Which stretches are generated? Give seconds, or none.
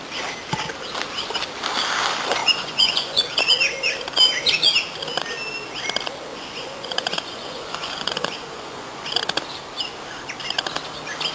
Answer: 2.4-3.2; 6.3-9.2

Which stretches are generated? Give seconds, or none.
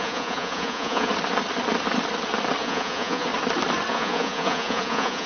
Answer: 0.0-1.1; 2.6-3.3; 3.9-5.3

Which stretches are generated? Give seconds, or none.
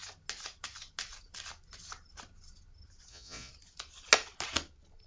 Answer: 3.1-3.5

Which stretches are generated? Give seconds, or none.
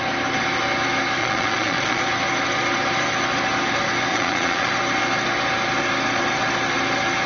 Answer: 1.2-2.0; 4.1-4.7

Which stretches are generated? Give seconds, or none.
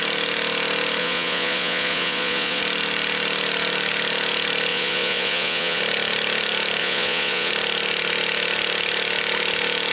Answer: 1.0-2.6; 4.7-5.8; 6.8-7.5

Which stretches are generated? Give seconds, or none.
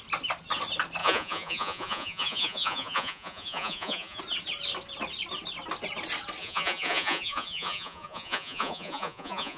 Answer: 1.0-4.2; 6.4-9.6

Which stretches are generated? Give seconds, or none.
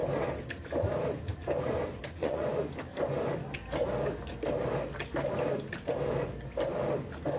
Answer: 2.2-2.7